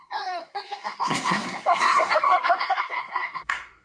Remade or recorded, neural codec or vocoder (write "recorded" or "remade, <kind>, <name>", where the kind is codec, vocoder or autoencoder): remade, codec, SNAC